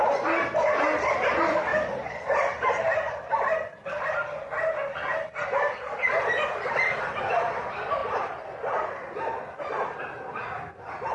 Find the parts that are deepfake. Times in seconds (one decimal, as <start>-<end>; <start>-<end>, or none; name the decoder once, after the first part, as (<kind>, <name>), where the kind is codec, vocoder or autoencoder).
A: 1.7-5.0 (vocoder, BigVGAN v2); 8.0-10.0